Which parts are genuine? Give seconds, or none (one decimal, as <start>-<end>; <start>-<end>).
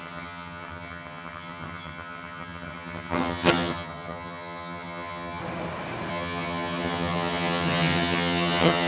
5.4-6.1